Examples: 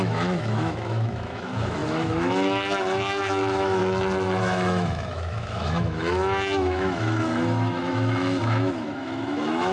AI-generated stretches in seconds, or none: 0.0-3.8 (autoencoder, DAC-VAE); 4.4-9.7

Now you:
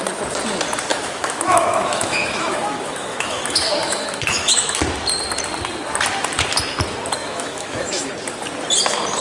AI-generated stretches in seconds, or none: 0.9-4.8 (autoencoder, DAC-VAE); 7.2-8.1

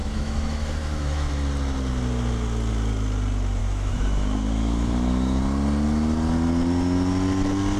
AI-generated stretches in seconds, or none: 0.0-1.3 (autoencoder, DAC-VAE); 3.6-5.4

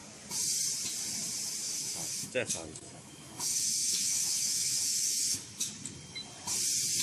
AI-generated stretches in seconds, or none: 1.6-5.7 (autoencoder, DAC-VAE)